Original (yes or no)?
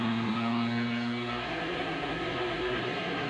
no